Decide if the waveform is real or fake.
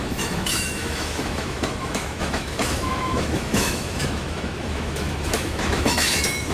fake